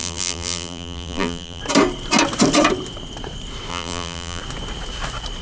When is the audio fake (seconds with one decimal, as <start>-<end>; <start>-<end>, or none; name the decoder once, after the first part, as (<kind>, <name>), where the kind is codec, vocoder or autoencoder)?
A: 0.0-1.6 (vocoder, BigVGAN v2); 3.7-4.4